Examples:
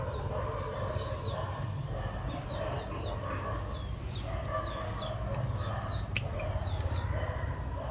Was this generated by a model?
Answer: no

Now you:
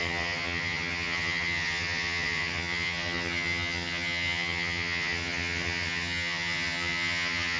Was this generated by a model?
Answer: yes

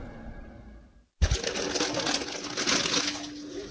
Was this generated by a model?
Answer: no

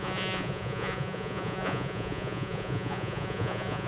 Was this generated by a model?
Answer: yes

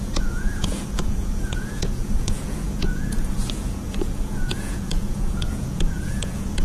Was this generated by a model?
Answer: yes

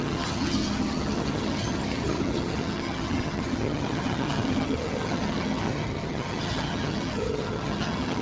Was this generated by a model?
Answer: yes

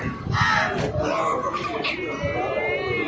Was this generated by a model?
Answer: no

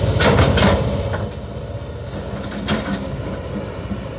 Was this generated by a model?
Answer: no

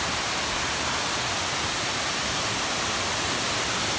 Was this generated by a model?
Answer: no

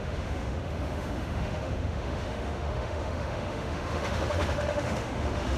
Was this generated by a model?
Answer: yes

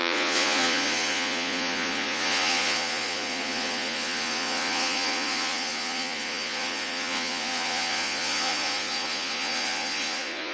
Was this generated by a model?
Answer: yes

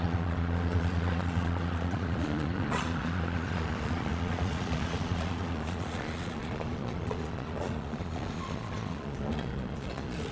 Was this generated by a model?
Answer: yes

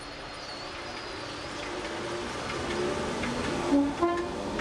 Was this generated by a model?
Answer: no